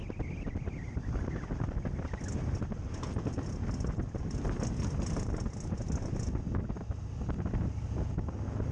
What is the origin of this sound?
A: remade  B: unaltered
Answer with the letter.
B